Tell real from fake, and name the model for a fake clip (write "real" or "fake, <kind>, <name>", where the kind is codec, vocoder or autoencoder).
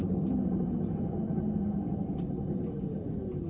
real